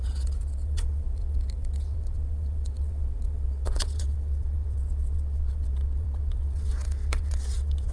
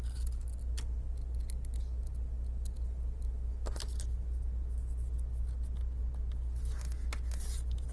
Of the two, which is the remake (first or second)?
first